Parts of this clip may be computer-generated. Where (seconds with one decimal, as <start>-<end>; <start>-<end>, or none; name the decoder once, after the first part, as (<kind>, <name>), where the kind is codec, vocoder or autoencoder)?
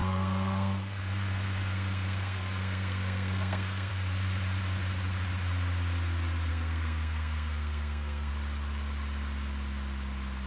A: 0.0-3.9 (codec, SNAC); 6.5-8.3